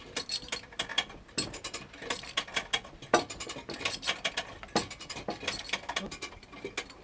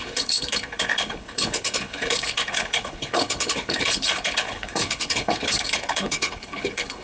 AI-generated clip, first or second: second